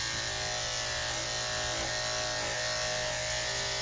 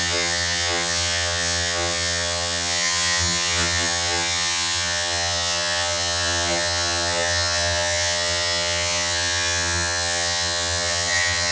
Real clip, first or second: first